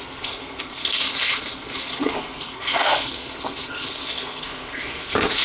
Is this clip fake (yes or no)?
yes